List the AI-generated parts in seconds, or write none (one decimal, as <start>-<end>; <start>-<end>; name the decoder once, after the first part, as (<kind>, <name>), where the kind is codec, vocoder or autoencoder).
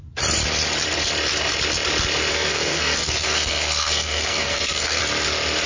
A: 2.3-5.0 (codec, SNAC)